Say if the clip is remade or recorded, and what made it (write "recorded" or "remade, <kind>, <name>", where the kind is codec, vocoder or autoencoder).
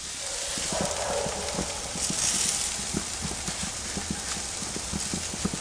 recorded